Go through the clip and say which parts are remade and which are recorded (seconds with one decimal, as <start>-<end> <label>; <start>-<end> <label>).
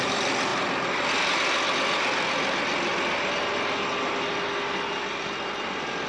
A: 0.0-6.1 recorded